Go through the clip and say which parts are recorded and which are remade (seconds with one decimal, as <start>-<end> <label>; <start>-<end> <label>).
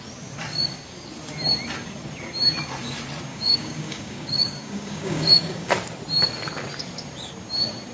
0.0-3.3 recorded; 3.3-5.7 remade; 5.7-7.9 recorded